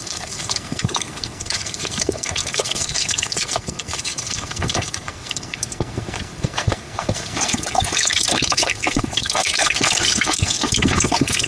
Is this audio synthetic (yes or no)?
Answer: yes